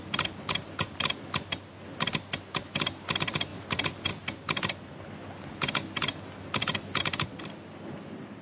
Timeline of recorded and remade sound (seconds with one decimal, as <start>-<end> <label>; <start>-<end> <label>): 0.0-8.4 recorded